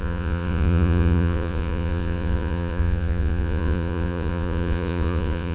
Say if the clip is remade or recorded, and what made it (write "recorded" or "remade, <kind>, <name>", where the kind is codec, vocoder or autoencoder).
remade, vocoder, Vocos